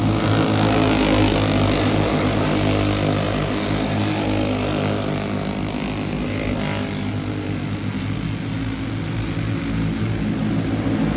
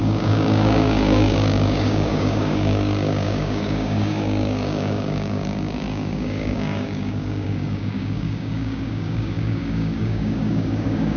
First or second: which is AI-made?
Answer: second